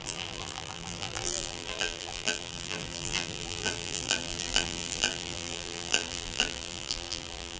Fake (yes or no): yes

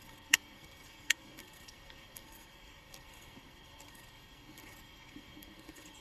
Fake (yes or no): yes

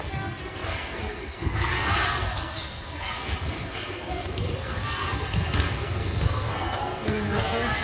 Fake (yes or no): yes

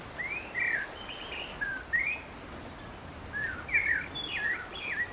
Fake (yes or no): no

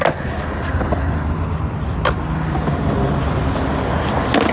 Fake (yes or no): no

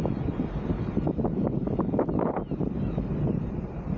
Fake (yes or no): no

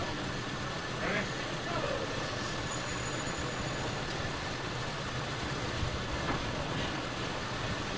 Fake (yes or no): yes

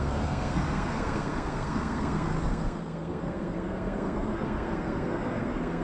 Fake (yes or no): yes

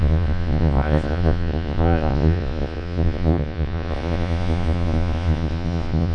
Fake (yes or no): yes